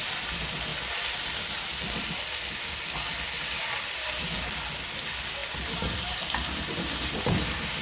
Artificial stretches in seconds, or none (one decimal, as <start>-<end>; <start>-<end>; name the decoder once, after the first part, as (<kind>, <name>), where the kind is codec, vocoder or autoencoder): 5.4-6.7 (vocoder, BigVGAN v2)